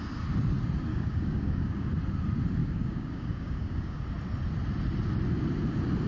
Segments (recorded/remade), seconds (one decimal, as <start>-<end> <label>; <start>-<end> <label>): 0.0-0.9 recorded; 0.9-1.9 remade; 1.9-2.6 recorded; 2.6-4.0 remade; 4.0-6.1 recorded